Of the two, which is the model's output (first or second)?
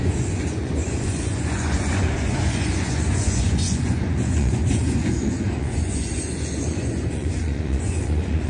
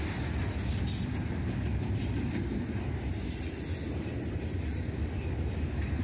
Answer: first